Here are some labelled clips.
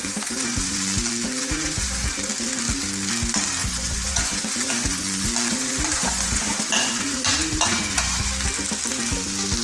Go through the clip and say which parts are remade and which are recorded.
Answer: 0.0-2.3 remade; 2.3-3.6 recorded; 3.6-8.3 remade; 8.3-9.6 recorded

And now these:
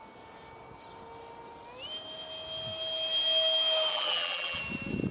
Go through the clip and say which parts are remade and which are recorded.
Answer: 0.0-3.9 recorded; 3.9-4.6 remade; 4.6-5.1 recorded

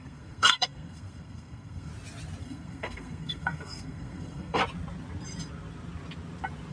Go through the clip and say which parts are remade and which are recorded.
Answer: 0.0-1.9 remade; 1.9-2.4 recorded; 2.4-4.6 remade; 4.6-6.7 recorded

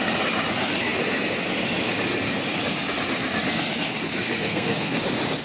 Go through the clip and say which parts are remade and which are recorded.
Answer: 0.0-4.2 recorded; 4.2-5.0 remade; 5.0-5.4 recorded

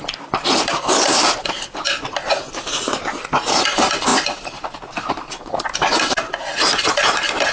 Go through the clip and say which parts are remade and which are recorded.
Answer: 0.0-7.5 recorded

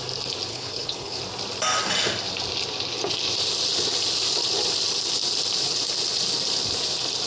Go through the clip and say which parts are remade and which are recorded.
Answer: 0.0-0.5 recorded; 0.5-1.2 remade; 1.2-7.3 recorded

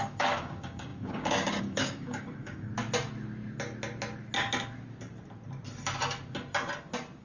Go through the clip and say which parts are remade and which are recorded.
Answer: 0.0-2.7 remade; 2.7-7.2 recorded

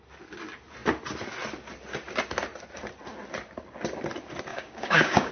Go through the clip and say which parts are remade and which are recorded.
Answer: 0.0-4.5 recorded; 4.5-5.3 remade